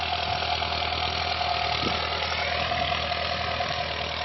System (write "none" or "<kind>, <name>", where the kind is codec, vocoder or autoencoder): none